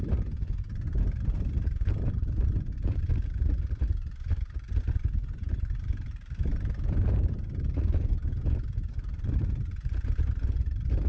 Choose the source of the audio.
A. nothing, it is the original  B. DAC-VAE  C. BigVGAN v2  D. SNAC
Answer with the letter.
C